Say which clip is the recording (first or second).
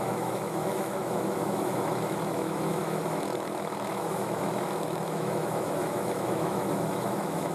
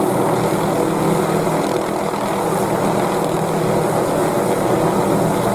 second